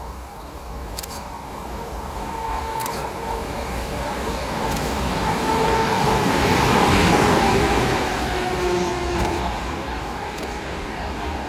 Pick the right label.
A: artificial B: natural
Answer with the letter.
A